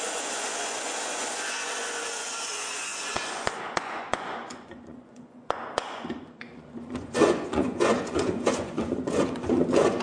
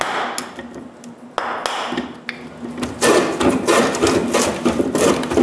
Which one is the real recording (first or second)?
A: second